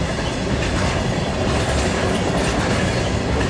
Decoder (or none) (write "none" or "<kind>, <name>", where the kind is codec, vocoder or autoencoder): none